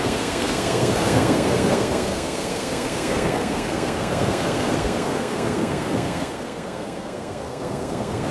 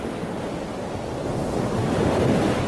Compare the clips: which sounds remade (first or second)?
first